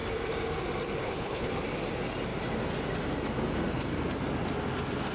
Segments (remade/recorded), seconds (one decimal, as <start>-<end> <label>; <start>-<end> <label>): 0.0-1.0 recorded; 1.0-1.5 remade; 1.5-5.1 recorded